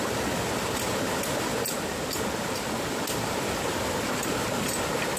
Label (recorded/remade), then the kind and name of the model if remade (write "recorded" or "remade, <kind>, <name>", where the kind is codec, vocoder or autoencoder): recorded